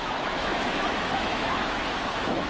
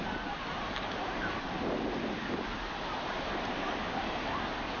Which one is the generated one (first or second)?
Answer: first